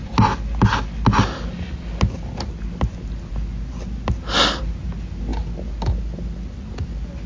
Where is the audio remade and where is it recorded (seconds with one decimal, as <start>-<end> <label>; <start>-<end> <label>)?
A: 0.0-7.3 recorded

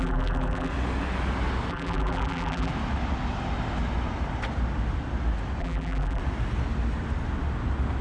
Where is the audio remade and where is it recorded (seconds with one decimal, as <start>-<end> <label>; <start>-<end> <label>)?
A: 0.0-0.7 remade; 0.7-1.7 recorded; 1.7-2.7 remade; 2.7-5.6 recorded; 5.6-6.2 remade; 6.2-8.0 recorded